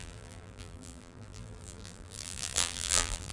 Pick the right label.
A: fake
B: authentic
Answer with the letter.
A